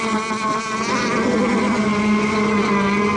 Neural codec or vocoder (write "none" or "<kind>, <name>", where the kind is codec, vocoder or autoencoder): none